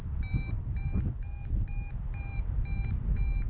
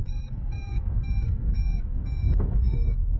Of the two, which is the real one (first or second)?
first